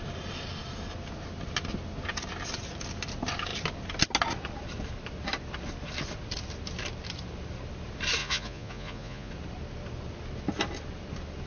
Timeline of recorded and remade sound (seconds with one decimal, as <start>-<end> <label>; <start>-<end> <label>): 0.0-8.2 recorded; 8.2-9.3 remade; 9.3-11.5 recorded